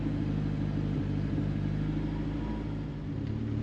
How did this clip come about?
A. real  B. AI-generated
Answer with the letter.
A